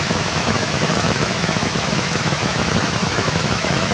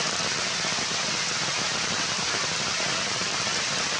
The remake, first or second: first